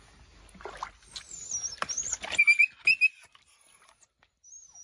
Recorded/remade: recorded